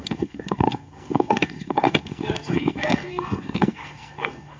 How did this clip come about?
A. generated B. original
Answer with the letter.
A